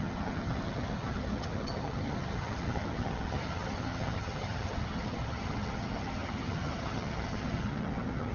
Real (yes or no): no